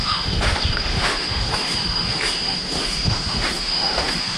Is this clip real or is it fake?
fake